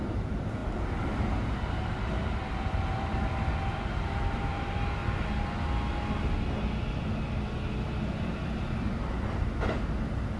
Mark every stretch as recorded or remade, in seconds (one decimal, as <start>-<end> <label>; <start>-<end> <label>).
0.0-5.0 remade; 5.0-8.3 recorded; 8.3-10.4 remade